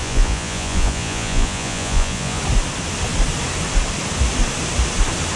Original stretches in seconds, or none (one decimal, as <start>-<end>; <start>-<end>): 2.4-5.4